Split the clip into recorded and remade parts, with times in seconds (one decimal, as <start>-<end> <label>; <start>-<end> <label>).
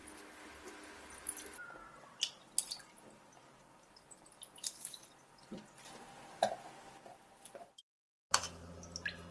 0.0-9.3 recorded